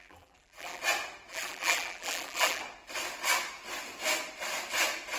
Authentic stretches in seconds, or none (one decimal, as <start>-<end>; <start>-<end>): 0.8-1.3; 2.6-5.2